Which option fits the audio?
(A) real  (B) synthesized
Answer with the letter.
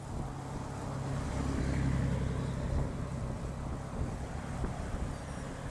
A